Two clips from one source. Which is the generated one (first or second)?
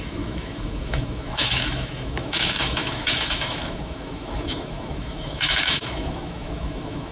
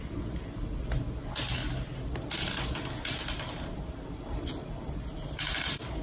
first